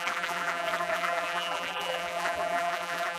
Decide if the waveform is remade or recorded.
remade